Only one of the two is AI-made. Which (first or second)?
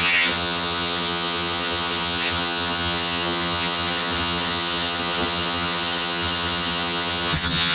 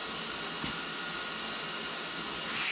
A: first